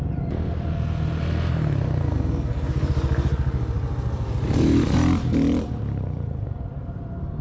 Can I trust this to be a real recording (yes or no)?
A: yes